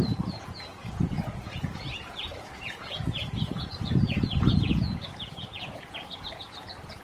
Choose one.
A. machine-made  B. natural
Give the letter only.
A